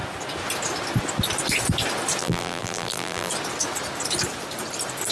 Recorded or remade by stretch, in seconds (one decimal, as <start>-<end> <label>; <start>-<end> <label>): 0.0-2.2 recorded; 2.2-3.3 remade; 3.3-5.1 recorded